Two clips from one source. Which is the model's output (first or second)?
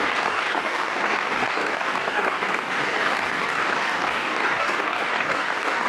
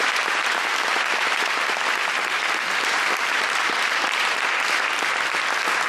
first